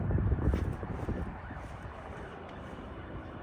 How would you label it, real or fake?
fake